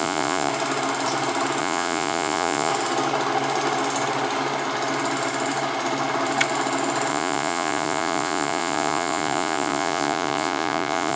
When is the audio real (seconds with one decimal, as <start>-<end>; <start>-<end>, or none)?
0.5-1.6; 2.7-7.1